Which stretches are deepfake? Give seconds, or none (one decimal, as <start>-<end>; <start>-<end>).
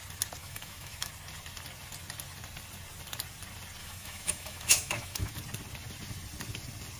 0.4-1.1; 3.8-5.3